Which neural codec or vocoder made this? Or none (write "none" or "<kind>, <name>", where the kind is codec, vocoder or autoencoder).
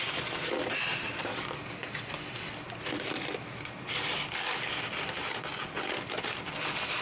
none